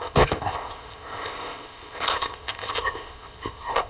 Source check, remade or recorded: remade